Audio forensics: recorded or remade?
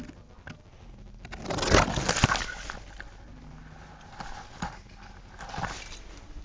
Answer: recorded